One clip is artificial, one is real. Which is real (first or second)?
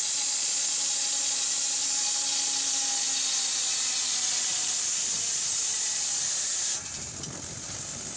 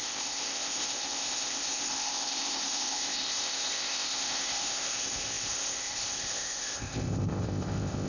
first